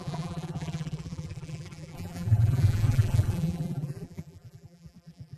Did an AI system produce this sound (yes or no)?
yes